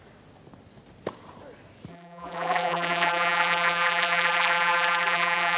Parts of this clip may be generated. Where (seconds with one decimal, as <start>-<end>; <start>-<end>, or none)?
1.9-5.6